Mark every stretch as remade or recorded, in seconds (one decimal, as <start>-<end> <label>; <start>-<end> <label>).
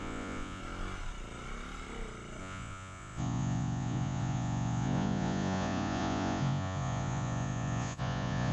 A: 0.0-0.6 remade; 0.6-2.4 recorded; 2.4-8.5 remade